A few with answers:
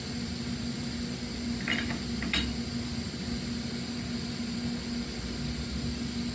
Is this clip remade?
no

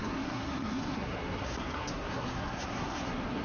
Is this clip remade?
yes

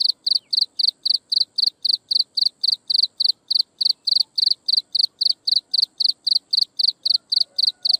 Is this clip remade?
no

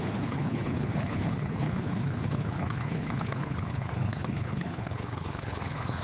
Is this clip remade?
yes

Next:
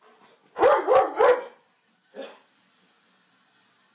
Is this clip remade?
no